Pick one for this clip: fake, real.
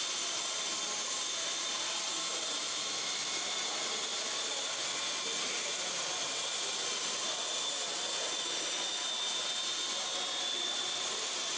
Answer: real